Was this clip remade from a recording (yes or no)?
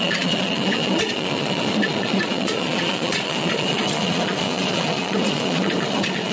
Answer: yes